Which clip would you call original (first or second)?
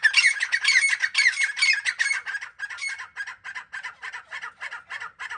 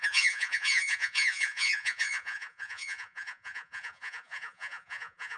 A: first